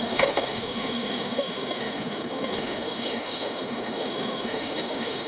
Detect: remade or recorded remade